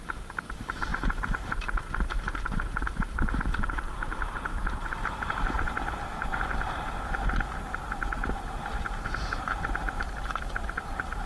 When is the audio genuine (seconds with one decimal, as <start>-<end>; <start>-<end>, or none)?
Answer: 6.3-8.4